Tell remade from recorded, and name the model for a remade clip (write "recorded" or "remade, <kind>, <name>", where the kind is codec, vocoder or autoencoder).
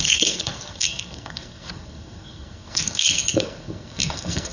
remade, codec, SNAC